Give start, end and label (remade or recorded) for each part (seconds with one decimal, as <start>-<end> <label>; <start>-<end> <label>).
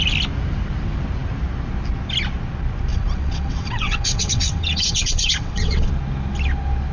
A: 0.0-2.9 recorded; 2.9-5.9 remade; 5.9-6.9 recorded